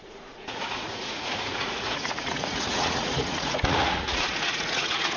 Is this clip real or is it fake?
fake